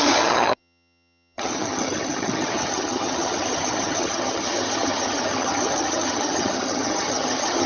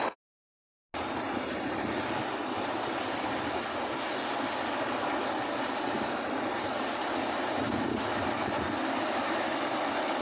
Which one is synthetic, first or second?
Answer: first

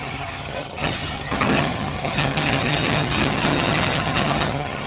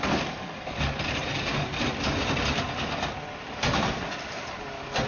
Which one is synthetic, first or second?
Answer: first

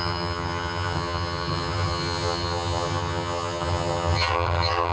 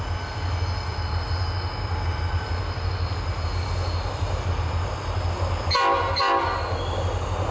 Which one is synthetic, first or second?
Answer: first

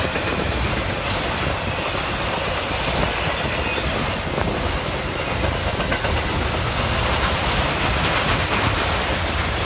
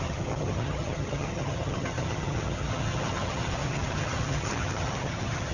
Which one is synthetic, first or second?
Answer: second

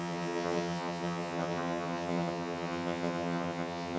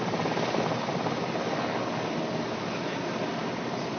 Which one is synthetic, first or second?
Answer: first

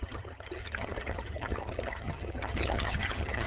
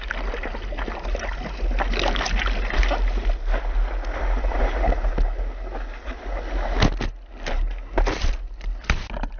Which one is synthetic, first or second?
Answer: first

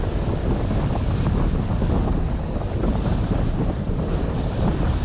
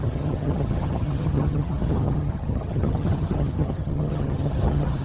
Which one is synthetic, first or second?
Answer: second